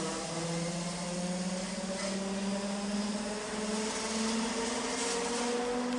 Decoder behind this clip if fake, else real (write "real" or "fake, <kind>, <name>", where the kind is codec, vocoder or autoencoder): real